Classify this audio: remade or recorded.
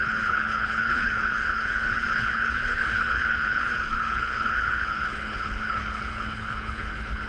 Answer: remade